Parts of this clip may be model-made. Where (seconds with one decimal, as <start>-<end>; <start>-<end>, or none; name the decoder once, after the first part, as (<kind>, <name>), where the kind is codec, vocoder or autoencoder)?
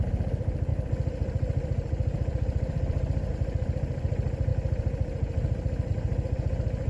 0.7-3.3 (vocoder, BigVGAN v2)